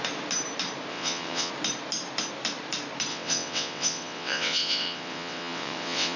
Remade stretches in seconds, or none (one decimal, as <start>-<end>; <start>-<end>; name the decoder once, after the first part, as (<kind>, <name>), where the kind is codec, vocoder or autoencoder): 0.9-1.5 (vocoder, WaveNeXt); 3.1-6.2